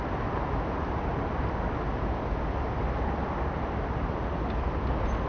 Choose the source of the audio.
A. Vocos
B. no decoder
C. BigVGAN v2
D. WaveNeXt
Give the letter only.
B